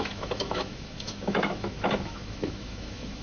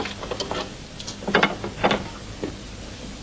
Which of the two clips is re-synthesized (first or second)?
first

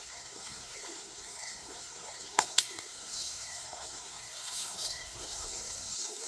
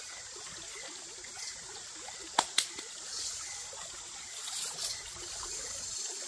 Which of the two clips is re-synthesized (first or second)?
first